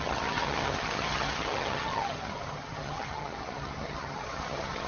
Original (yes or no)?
no